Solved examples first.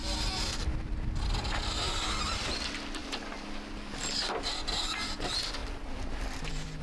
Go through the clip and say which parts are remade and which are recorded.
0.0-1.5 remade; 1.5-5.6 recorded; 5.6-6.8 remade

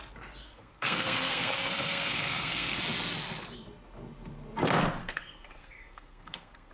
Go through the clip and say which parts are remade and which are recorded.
0.0-0.4 recorded; 0.4-2.8 remade; 2.8-5.0 recorded; 5.0-6.7 remade

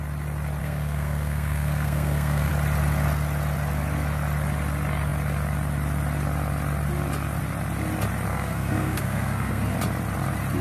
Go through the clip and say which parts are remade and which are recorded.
0.0-0.6 recorded; 0.6-2.5 remade; 2.5-8.3 recorded; 8.3-9.6 remade; 9.6-10.6 recorded

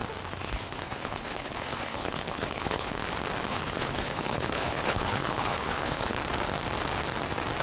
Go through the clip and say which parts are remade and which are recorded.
0.0-0.6 recorded; 0.6-3.0 remade; 3.0-3.5 recorded; 3.5-6.2 remade; 6.2-7.6 recorded

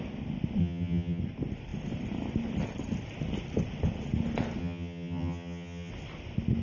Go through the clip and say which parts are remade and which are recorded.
0.0-0.6 recorded; 0.6-1.2 remade; 1.2-4.6 recorded; 4.6-5.9 remade; 5.9-6.6 recorded

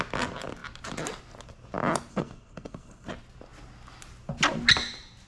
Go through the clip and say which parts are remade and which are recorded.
0.0-2.1 recorded; 2.1-3.1 remade; 3.1-5.3 recorded

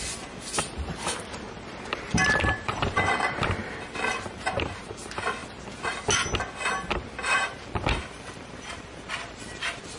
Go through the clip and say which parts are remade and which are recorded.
0.0-3.6 remade; 3.6-4.1 recorded; 4.1-5.4 remade; 5.4-6.9 recorded; 6.9-10.0 remade

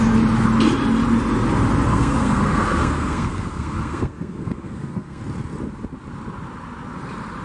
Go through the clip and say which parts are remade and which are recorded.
0.0-1.9 recorded; 1.9-5.2 remade; 5.2-7.4 recorded